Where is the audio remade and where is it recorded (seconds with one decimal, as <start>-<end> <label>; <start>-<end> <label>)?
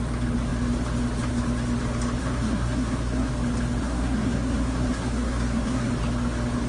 0.0-2.2 recorded; 2.2-3.3 remade; 3.3-3.8 recorded; 3.8-5.9 remade; 5.9-6.7 recorded